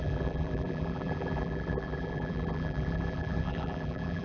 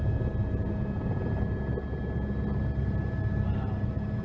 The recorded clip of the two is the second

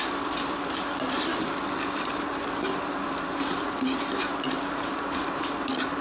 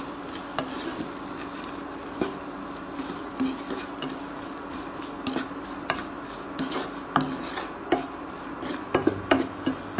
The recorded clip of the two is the second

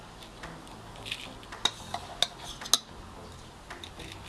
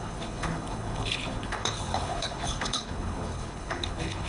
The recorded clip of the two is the first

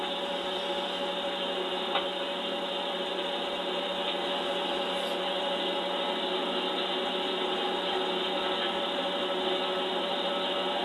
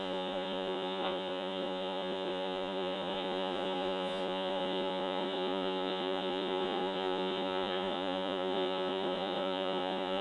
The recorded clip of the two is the first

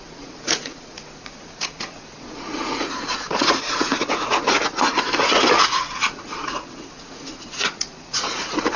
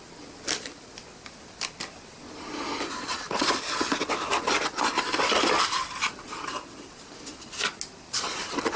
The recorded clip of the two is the second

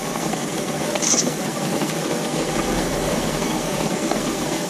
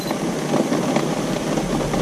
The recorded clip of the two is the second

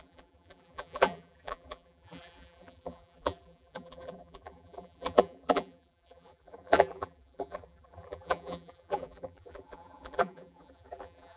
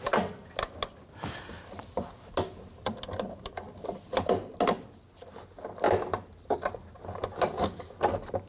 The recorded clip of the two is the second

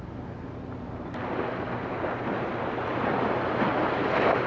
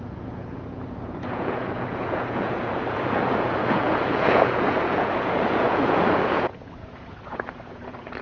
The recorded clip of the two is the first